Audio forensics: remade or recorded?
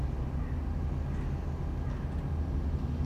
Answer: recorded